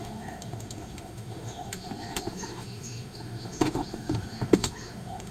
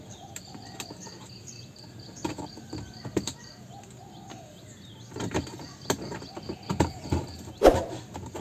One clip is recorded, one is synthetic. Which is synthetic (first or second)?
first